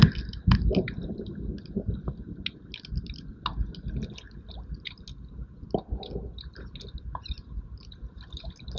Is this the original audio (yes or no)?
yes